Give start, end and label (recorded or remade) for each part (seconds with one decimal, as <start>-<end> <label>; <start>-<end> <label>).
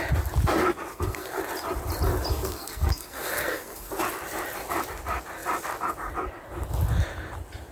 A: 0.0-0.9 recorded; 0.9-1.4 remade; 1.4-2.3 recorded; 2.3-3.9 remade; 3.9-7.7 recorded